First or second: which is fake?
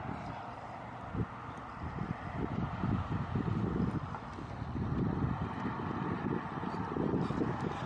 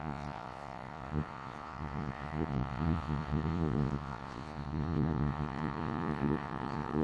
second